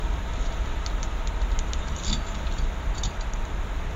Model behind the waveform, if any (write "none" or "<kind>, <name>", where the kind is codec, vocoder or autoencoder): none